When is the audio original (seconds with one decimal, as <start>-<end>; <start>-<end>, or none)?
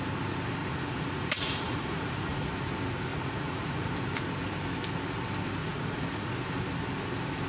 0.0-0.6; 2.5-3.1; 3.9-5.6; 6.3-7.5